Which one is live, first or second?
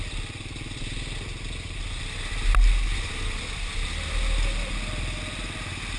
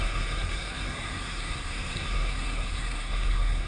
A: first